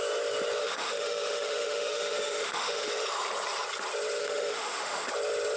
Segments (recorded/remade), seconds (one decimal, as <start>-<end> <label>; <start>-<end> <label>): 0.0-0.6 recorded; 0.6-2.9 remade; 2.9-4.2 recorded; 4.2-5.1 remade; 5.1-5.6 recorded